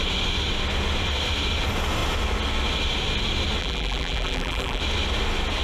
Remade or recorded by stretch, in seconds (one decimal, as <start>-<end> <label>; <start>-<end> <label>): 0.0-3.6 recorded; 3.6-4.8 remade; 4.8-5.6 recorded